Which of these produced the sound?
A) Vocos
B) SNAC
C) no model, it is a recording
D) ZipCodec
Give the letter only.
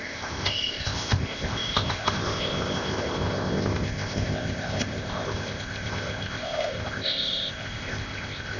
D